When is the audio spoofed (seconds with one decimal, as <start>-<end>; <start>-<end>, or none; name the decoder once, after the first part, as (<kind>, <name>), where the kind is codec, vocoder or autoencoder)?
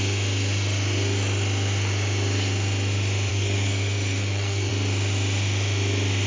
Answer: 3.3-4.7 (codec, SNAC)